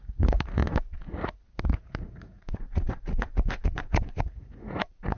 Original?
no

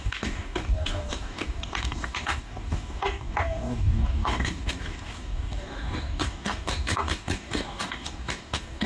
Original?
no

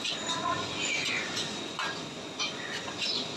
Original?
no